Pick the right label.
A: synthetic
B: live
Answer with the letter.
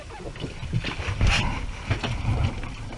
B